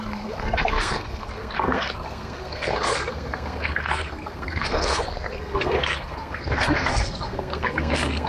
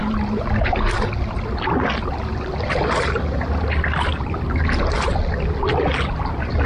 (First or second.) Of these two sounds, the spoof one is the first